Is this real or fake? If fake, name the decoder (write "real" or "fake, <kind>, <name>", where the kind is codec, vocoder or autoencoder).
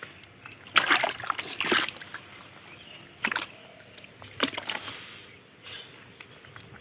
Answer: real